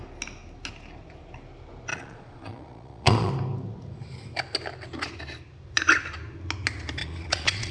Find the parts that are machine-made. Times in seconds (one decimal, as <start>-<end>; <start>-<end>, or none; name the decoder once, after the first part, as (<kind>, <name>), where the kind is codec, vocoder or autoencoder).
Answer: 1.9-3.3 (vocoder, Vocos); 7.0-7.7